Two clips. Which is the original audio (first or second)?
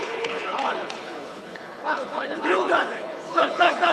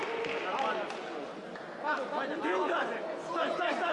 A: second